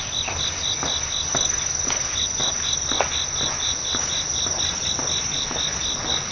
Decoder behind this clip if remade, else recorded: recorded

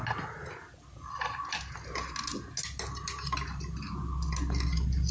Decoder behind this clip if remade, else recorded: recorded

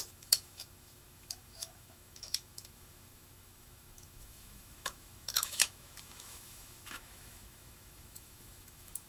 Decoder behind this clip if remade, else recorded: remade, autoencoder, DAC-VAE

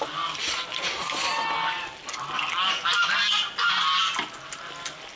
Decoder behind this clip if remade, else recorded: recorded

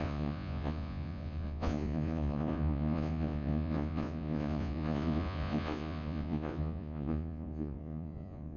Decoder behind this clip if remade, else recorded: remade, vocoder, Vocos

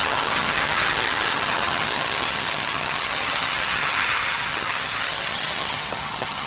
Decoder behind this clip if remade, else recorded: remade, vocoder, HiFi-GAN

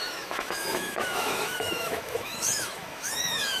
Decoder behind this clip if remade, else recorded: remade, autoencoder, DAC-VAE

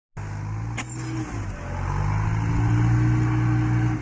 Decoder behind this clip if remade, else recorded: recorded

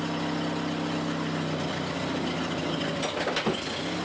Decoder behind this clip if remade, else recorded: recorded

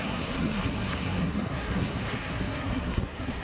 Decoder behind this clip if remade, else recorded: remade, codec, SNAC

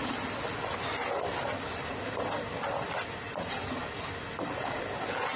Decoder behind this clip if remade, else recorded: recorded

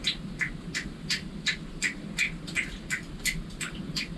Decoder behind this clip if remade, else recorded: recorded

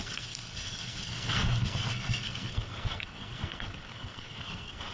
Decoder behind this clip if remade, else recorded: remade, codec, SNAC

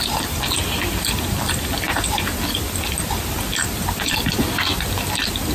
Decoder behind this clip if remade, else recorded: remade, vocoder, BigVGAN v2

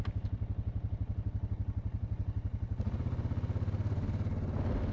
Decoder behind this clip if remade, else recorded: recorded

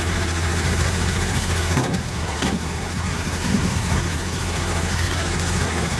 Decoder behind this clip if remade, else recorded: remade, codec, SNAC